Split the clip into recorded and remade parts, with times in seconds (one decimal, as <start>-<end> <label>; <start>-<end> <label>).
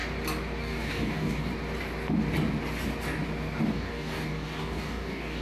0.0-0.6 recorded; 0.6-1.5 remade; 1.5-3.6 recorded; 3.6-5.4 remade